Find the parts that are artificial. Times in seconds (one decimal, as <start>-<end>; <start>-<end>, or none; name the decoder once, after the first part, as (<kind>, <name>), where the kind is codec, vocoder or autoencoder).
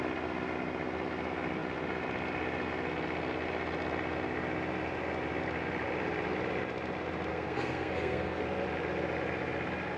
7.3-8.4 (codec, SNAC)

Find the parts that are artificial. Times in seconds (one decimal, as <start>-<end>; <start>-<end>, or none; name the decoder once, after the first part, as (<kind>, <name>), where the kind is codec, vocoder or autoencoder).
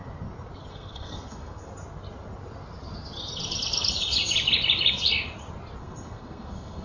0.7-1.7 (codec, SNAC); 5.8-6.8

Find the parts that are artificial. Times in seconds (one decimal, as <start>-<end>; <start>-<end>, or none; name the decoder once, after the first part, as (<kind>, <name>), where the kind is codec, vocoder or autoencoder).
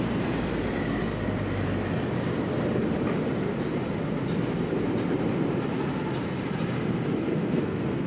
7.3-8.1 (codec, SNAC)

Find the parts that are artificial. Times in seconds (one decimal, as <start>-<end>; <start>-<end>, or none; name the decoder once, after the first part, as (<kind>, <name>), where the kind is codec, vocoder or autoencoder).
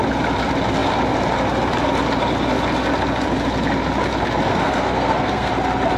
4.5-5.5 (codec, SNAC)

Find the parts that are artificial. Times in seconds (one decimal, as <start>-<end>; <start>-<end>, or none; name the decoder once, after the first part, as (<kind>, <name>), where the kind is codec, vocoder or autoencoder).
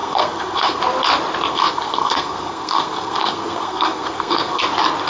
0.0-0.8 (codec, SNAC); 1.5-4.6